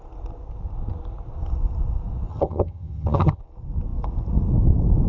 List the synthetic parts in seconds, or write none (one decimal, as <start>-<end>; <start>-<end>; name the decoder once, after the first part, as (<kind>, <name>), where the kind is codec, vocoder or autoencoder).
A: 2.3-3.4 (vocoder, HiFi-GAN)